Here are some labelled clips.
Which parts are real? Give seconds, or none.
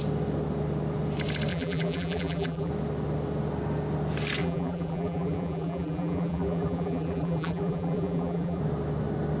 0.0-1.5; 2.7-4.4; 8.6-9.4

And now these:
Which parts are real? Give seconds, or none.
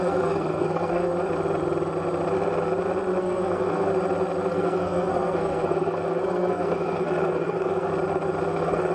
1.1-3.2; 3.9-4.5; 7.9-8.5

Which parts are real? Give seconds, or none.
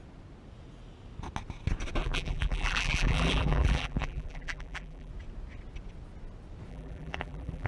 0.0-2.0; 5.1-6.7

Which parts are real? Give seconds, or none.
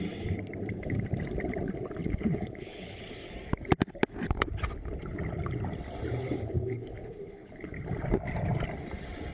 0.0-2.0; 3.0-6.2; 7.7-9.3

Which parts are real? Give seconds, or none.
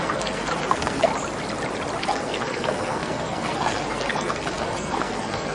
1.1-2.0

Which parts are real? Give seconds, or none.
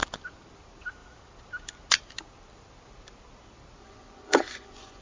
0.0-3.8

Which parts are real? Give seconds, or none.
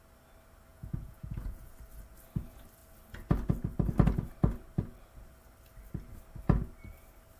0.0-0.7; 1.7-7.4